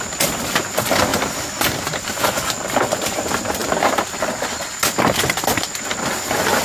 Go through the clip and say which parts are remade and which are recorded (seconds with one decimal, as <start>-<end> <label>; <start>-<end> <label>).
0.0-1.1 recorded; 1.1-2.2 remade; 2.2-3.6 recorded; 3.6-4.6 remade; 4.6-6.6 recorded